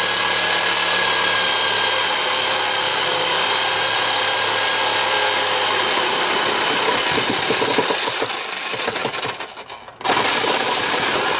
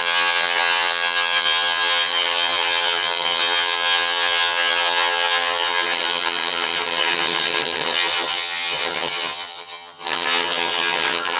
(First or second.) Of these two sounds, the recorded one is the first